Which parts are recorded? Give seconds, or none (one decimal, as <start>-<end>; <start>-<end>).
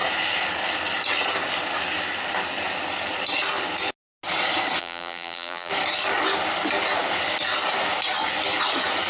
0.0-4.8; 5.7-9.1